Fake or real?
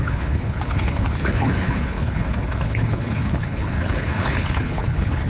fake